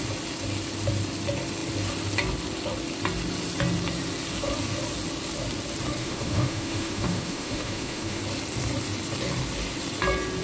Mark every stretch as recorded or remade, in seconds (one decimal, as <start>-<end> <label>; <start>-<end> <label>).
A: 0.0-6.0 recorded; 6.0-8.2 remade; 8.2-10.4 recorded